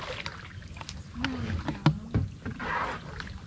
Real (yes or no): yes